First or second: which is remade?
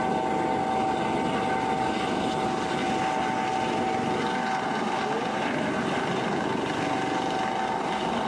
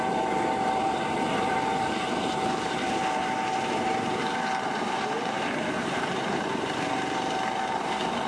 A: second